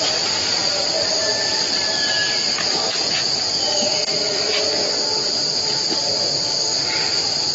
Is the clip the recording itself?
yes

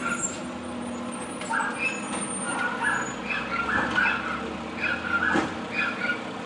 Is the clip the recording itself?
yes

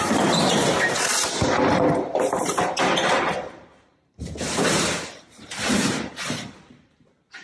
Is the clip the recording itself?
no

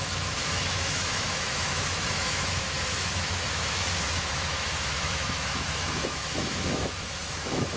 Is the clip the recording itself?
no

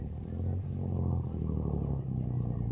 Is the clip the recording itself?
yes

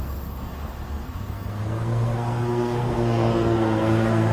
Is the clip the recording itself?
no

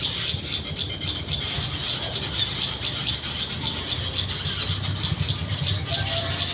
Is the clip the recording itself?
yes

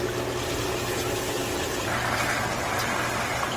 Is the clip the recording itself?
yes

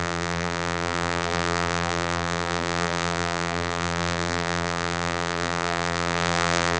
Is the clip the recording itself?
no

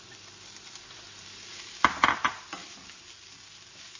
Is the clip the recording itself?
yes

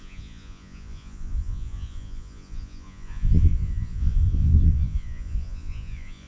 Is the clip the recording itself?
no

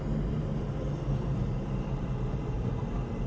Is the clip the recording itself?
no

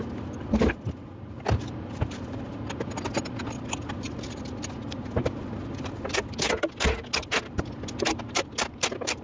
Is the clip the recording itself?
yes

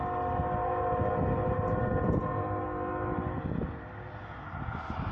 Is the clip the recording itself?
yes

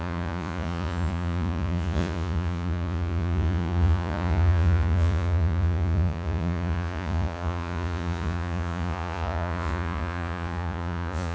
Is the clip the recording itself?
no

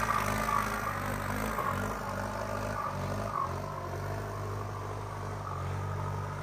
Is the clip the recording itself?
yes